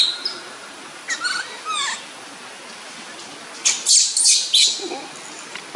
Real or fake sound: real